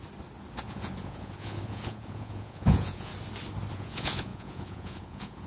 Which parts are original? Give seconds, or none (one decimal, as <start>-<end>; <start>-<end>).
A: 0.0-0.6; 3.1-3.7